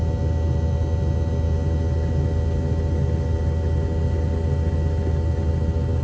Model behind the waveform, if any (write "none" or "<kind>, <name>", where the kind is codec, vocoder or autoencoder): none